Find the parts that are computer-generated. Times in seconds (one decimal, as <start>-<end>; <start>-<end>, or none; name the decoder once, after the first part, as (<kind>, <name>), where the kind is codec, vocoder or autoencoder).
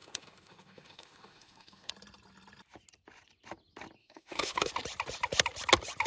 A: 0.0-1.9 (autoencoder, DAC-VAE); 4.0-4.7